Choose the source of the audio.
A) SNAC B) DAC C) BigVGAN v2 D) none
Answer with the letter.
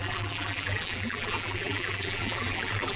C